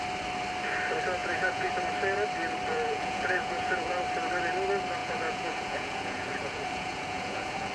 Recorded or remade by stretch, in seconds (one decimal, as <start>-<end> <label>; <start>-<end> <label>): 0.0-1.2 recorded; 1.2-1.7 remade; 1.7-2.7 recorded; 2.7-4.0 remade; 4.0-5.0 recorded; 5.0-7.7 remade

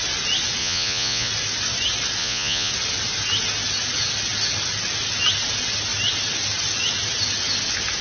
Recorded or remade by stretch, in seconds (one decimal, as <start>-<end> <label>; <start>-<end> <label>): 0.0-0.6 recorded; 0.6-1.3 remade; 1.3-2.2 recorded; 2.2-2.7 remade; 2.7-8.0 recorded

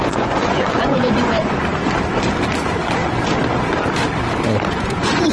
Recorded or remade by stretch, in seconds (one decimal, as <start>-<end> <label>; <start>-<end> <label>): 0.0-1.7 remade; 1.7-4.7 recorded; 4.7-5.3 remade